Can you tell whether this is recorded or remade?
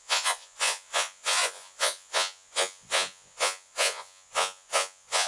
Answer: remade